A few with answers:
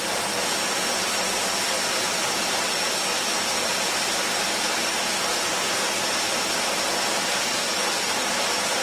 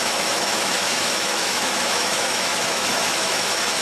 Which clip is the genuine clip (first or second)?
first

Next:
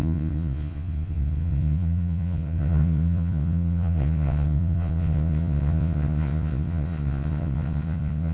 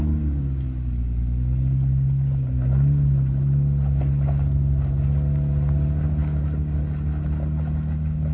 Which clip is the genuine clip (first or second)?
second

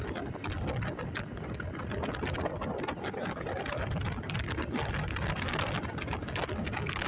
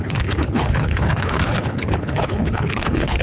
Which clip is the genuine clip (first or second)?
first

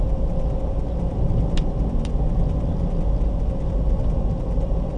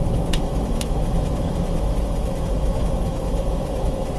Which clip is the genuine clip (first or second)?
first